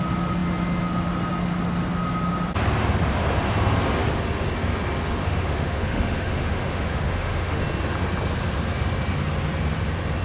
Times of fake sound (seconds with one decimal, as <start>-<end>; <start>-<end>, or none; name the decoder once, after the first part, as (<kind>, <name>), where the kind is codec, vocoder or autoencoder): 5.2-7.6 (autoencoder, DAC-VAE)